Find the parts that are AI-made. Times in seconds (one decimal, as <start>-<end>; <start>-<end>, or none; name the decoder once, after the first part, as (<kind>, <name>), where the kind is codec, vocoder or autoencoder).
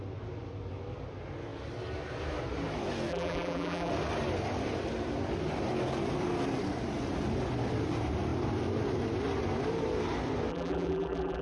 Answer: 3.1-3.9 (vocoder, BigVGAN v2); 10.5-11.4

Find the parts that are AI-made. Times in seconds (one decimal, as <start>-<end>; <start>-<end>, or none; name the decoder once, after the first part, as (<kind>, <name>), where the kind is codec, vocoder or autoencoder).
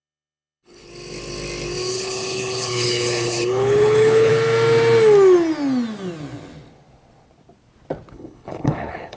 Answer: 0.0-0.9 (codec, HILCodec); 1.9-4.3; 8.1-9.2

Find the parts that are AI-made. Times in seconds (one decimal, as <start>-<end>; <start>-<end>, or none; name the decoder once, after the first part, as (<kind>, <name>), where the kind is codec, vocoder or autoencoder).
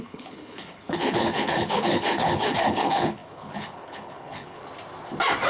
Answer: 0.0-4.6 (codec, HILCodec)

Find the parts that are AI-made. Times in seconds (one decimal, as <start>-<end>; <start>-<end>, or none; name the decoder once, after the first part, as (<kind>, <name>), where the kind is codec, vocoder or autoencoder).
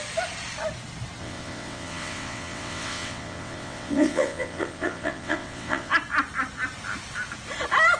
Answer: 1.2-5.9 (vocoder, WaveNeXt)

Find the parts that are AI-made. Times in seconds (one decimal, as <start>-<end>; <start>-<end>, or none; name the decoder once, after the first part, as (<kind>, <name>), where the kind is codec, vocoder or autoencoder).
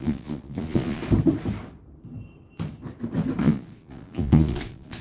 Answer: 0.0-1.0 (vocoder, Vocos); 3.4-5.0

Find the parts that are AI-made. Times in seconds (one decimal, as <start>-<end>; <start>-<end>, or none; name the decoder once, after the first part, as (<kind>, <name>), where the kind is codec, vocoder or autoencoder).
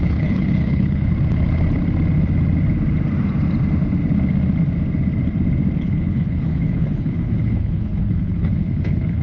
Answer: 0.0-1.1 (codec, HILCodec); 5.8-9.2